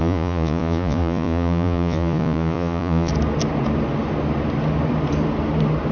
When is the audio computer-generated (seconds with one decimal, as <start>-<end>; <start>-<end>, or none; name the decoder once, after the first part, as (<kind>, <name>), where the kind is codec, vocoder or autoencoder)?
0.0-3.1 (vocoder, Vocos)